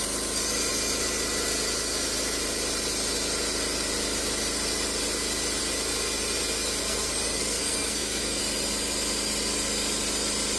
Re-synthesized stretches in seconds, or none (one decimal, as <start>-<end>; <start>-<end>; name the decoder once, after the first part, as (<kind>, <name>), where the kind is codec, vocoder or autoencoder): 6.8-8.4 (codec, SNAC)